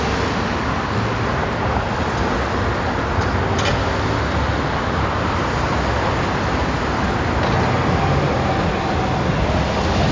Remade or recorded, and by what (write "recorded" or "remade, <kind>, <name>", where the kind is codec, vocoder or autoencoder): recorded